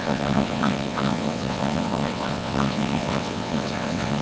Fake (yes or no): yes